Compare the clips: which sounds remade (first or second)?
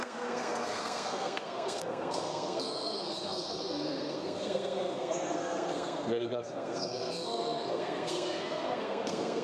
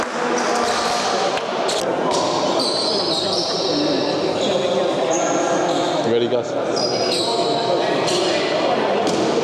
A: first